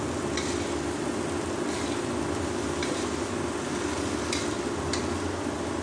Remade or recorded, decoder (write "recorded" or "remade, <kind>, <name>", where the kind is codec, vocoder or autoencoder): recorded